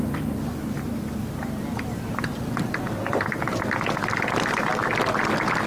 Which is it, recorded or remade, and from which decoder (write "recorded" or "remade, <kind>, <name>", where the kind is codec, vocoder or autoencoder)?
recorded